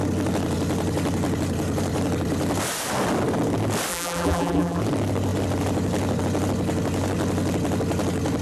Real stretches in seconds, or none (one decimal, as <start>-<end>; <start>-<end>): 0.0-3.9; 4.8-8.4